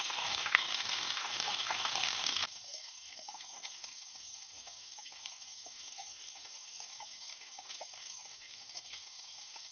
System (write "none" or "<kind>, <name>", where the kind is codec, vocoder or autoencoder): codec, DAC